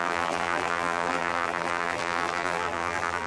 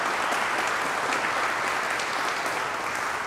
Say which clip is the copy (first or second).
first